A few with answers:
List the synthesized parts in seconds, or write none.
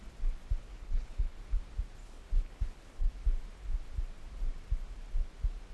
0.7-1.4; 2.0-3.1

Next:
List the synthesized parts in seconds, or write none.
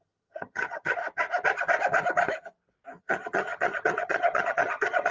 0.0-1.0; 3.0-5.1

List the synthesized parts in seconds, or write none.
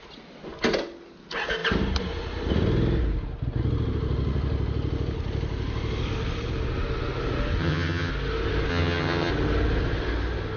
7.6-8.1; 8.7-9.3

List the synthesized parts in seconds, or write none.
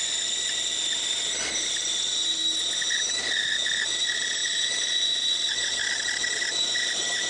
none